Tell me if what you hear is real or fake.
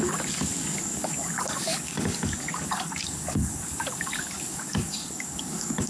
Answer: fake